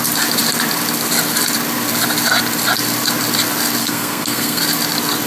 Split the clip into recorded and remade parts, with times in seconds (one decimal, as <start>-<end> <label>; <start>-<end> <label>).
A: 0.0-3.8 recorded; 3.8-4.6 remade; 4.6-5.3 recorded